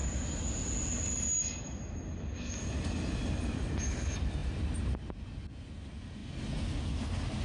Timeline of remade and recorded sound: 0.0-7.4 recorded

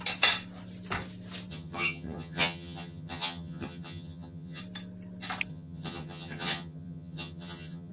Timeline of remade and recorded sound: 0.0-1.5 recorded; 1.5-4.6 remade; 4.6-5.5 recorded; 5.5-7.9 remade

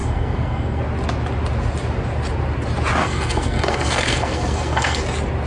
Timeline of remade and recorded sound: 0.0-0.8 remade; 0.8-3.0 recorded; 3.0-5.0 remade; 5.0-5.5 recorded

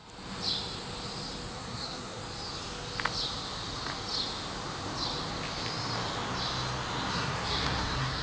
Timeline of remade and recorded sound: 0.0-1.5 recorded; 1.5-2.2 remade; 2.2-7.1 recorded; 7.1-8.2 remade

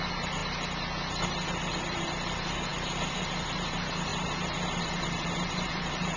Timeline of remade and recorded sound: 0.0-0.4 remade; 0.4-1.8 recorded; 1.8-4.1 remade; 4.1-4.8 recorded; 4.8-6.2 remade

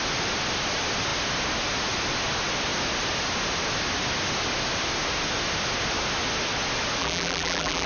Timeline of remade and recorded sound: 0.0-7.0 recorded; 7.0-7.9 remade

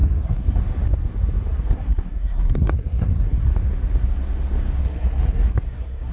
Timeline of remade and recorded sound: 0.0-0.6 remade; 0.6-1.5 recorded; 1.5-3.4 remade; 3.4-4.8 recorded; 4.8-6.1 remade

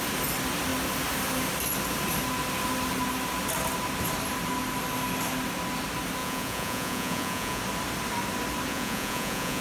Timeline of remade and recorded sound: 0.0-6.2 recorded; 6.2-7.6 remade; 7.6-8.7 recorded; 8.7-9.6 remade